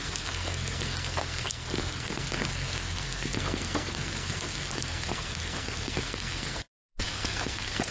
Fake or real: fake